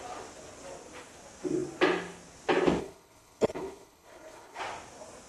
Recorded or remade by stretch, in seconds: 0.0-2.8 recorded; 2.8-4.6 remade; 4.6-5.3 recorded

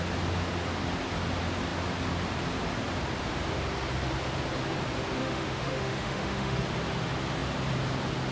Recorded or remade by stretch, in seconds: 0.0-5.2 recorded; 5.2-6.6 remade; 6.6-8.3 recorded

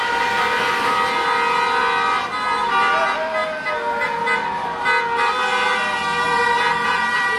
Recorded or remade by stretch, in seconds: 0.0-7.4 recorded

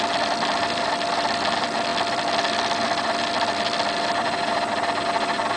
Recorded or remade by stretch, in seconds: 0.0-5.6 recorded